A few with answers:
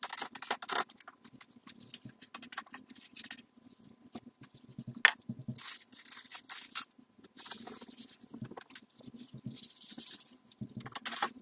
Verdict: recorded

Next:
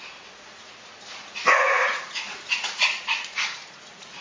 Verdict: remade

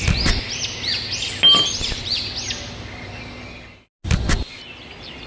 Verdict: recorded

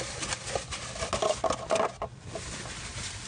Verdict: recorded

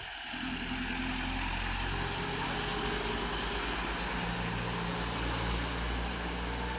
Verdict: recorded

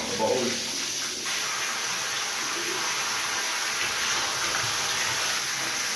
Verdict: recorded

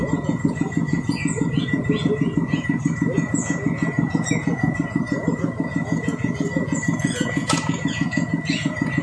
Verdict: remade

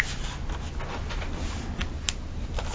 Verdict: recorded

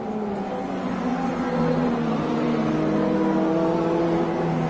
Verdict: recorded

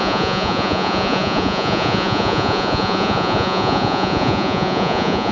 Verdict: remade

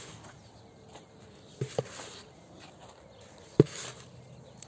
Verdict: recorded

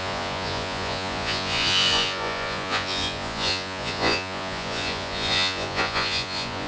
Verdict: remade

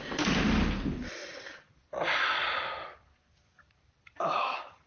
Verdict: recorded